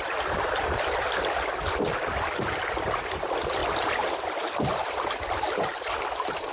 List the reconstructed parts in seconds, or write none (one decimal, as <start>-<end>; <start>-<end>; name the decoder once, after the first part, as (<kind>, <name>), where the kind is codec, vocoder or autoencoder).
none